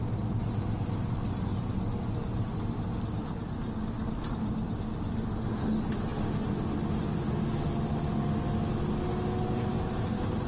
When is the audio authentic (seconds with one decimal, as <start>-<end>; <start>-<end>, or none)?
0.0-10.5